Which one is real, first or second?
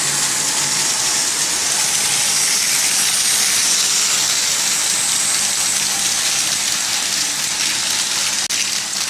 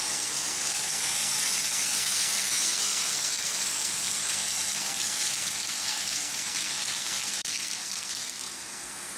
first